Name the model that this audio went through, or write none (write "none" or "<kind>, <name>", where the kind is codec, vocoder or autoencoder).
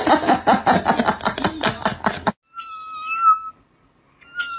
none